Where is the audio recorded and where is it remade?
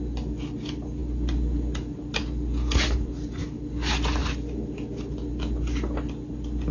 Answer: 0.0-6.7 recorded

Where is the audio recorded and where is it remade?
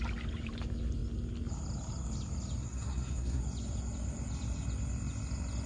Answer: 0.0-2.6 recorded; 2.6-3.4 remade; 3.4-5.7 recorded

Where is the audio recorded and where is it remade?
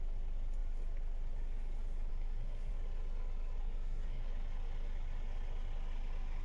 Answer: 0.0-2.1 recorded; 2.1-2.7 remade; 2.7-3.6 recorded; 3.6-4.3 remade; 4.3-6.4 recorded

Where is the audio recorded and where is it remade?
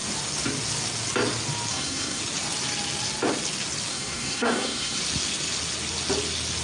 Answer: 0.0-1.7 recorded; 1.7-2.2 remade; 2.2-3.9 recorded; 3.9-5.0 remade; 5.0-6.6 recorded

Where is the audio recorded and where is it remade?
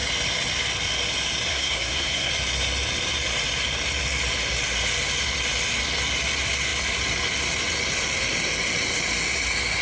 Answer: 0.0-1.5 recorded; 1.5-2.3 remade; 2.3-9.8 recorded